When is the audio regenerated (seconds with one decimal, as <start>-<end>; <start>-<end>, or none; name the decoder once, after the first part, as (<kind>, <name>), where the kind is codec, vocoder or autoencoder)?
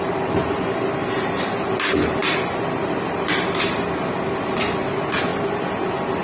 none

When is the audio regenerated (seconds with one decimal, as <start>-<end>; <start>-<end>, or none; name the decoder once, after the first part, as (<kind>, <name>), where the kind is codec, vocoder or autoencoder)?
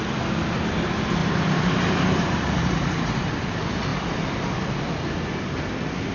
1.2-3.3 (vocoder, BigVGAN v2)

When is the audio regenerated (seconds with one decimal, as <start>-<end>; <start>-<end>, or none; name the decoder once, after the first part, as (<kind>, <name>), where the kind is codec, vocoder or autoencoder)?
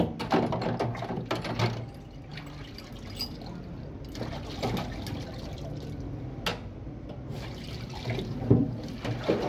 none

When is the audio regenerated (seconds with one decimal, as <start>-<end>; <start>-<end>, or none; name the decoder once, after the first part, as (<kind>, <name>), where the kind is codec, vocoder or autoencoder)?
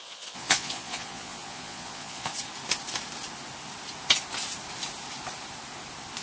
0.0-2.3 (vocoder, Vocos)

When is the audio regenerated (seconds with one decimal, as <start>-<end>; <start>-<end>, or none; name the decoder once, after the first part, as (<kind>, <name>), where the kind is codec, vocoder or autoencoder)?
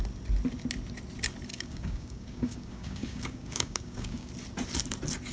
1.5-4.3 (codec, DAC)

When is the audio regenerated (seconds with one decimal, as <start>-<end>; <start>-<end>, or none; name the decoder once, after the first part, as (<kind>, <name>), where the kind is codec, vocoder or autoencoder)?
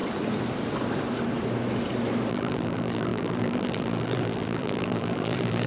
2.3-5.7 (vocoder, BigVGAN v2)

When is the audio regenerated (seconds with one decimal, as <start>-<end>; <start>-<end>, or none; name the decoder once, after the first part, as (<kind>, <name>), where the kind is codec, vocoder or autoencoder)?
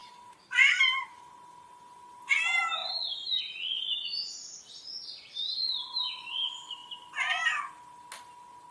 0.0-1.4 (vocoder, BigVGAN v2); 2.8-5.0